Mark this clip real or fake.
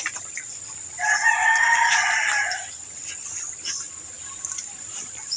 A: fake